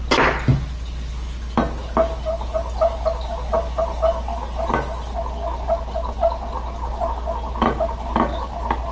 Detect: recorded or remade recorded